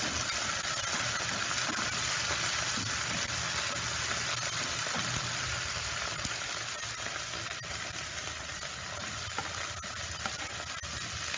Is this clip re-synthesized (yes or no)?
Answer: no